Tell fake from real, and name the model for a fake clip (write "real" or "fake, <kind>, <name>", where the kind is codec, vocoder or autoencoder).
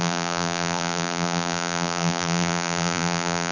fake, vocoder, BigVGAN v2